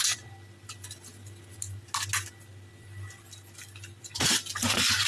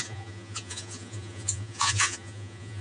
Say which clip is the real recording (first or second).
first